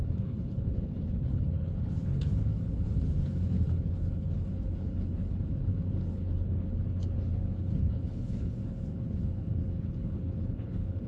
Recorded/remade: remade